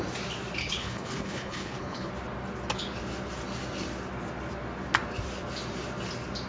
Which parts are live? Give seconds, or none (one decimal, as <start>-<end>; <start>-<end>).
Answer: 0.0-0.6; 2.1-6.5